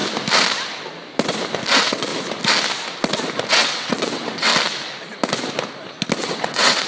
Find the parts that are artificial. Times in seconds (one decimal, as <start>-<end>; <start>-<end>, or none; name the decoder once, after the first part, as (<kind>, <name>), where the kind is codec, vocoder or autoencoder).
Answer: 1.7-2.1 (vocoder, WaveNeXt); 3.5-4.5; 6.2-6.9